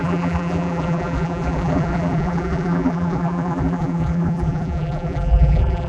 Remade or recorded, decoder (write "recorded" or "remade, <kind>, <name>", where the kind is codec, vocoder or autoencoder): remade, vocoder, BigVGAN v2